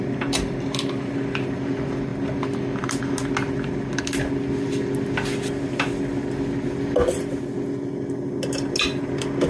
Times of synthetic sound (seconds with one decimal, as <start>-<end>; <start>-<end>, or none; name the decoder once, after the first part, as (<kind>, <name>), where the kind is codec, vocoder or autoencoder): none